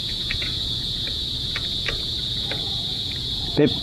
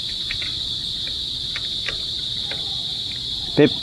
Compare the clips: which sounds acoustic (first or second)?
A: second